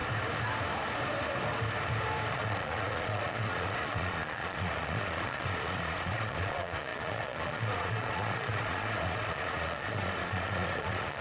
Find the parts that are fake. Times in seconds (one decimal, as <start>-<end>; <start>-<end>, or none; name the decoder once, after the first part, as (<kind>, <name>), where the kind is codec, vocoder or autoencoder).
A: 2.3-11.2 (vocoder, Vocos)